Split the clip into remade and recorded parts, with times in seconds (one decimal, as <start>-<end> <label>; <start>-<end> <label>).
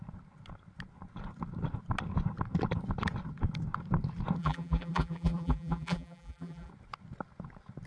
0.0-4.4 recorded; 4.4-6.7 remade; 6.7-7.9 recorded